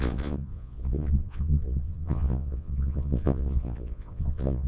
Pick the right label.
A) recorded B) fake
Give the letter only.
B